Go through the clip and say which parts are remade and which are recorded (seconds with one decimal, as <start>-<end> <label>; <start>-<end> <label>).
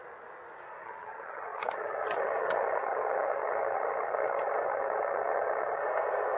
0.0-0.8 recorded; 0.8-5.8 remade; 5.8-6.4 recorded